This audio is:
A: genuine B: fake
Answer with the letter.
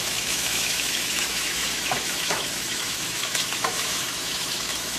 B